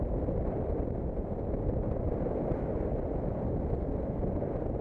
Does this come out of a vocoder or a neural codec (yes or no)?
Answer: no